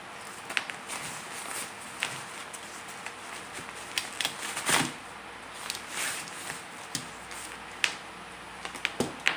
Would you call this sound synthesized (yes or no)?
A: no